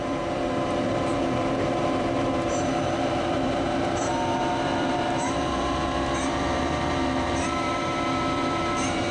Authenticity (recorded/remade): remade